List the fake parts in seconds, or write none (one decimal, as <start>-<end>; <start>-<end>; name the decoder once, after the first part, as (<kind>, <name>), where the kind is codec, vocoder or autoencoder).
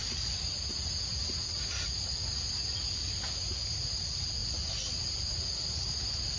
none